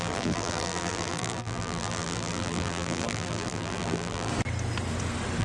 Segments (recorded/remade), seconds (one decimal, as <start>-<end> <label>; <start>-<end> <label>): 0.0-4.3 remade; 4.3-5.4 recorded